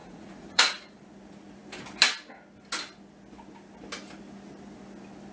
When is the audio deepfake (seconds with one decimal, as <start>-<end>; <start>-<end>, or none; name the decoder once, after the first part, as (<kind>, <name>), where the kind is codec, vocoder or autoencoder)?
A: 0.0-1.0 (vocoder, Vocos)